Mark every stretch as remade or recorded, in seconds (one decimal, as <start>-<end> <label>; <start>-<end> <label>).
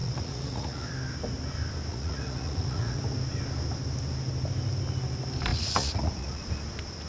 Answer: 0.0-0.9 remade; 0.9-1.9 recorded; 1.9-3.0 remade; 3.0-5.5 recorded; 5.5-6.4 remade; 6.4-7.1 recorded